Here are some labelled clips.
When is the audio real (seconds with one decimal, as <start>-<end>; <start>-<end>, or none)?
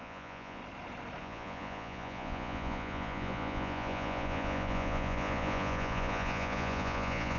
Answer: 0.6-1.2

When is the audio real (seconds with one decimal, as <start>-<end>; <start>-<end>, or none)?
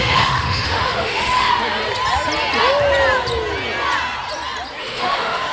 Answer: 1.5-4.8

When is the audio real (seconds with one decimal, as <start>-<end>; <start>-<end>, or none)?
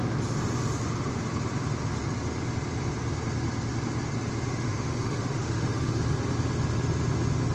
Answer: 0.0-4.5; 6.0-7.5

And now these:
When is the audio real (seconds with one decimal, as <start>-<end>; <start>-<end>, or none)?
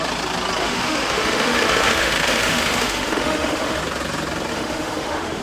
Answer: 0.0-0.6; 3.8-4.5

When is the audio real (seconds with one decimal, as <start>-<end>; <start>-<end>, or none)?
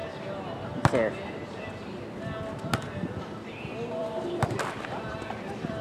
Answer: 0.0-3.1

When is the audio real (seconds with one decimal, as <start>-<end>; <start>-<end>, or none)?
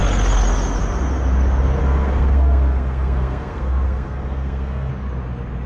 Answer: 0.0-1.8; 4.9-5.7